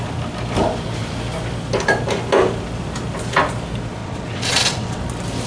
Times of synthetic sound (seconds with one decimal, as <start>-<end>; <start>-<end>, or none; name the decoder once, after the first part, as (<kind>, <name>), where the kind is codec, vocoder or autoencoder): 4.0-5.0 (vocoder, WaveNeXt)